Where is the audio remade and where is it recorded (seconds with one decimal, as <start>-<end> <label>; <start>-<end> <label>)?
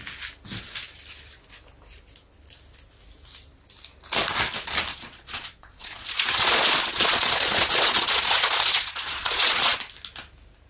0.0-4.9 recorded; 4.9-9.8 remade; 9.8-10.7 recorded